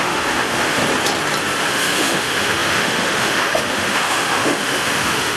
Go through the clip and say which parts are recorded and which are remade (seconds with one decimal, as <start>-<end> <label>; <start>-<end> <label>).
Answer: 0.0-0.8 remade; 0.8-1.7 recorded; 1.7-5.4 remade